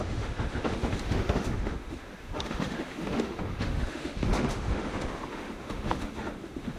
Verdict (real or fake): fake